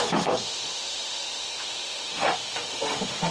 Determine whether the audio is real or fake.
fake